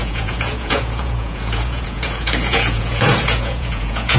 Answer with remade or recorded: remade